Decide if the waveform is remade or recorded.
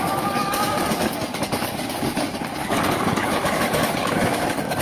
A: remade